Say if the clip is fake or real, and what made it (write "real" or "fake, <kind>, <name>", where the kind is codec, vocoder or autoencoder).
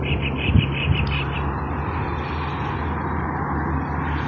real